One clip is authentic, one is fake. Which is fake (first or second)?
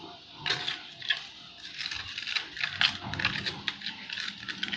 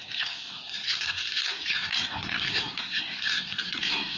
second